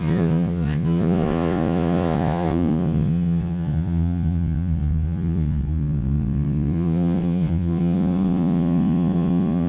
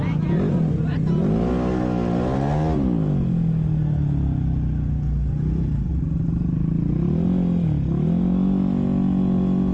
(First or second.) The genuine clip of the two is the second